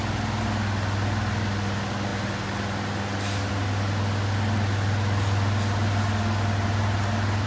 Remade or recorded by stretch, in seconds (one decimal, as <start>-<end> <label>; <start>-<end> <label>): 0.0-7.5 recorded